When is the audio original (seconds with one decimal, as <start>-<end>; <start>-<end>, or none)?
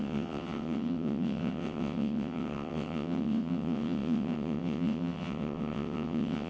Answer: none